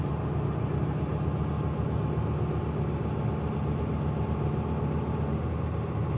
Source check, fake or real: real